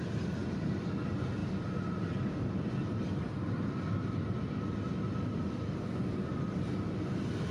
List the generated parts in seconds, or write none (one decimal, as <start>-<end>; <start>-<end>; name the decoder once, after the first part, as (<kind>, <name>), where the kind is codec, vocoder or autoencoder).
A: 0.4-0.9 (vocoder, BigVGAN v2); 1.4-4.6